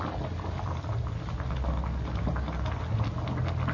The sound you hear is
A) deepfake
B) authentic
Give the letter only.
B